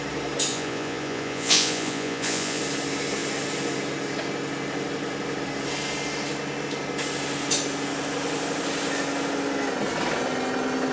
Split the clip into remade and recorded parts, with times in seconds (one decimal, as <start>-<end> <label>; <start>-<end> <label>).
0.0-0.5 recorded; 0.5-2.6 remade; 2.6-10.9 recorded